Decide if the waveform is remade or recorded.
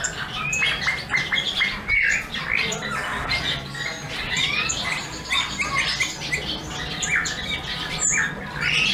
remade